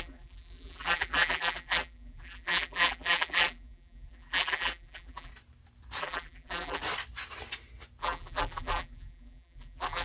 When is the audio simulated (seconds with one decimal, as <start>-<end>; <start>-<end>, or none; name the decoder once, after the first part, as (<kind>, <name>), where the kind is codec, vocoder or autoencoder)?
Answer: 0.0-5.3 (vocoder, BigVGAN v2); 6.0-6.8; 8.0-10.0